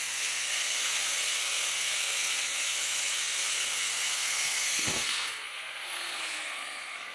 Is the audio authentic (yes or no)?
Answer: no